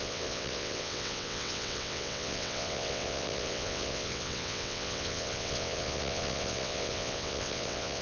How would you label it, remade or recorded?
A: remade